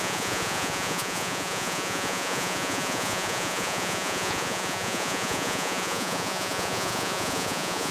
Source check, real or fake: fake